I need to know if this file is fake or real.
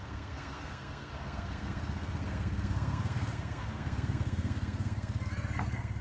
fake